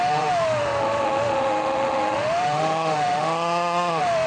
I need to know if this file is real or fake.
fake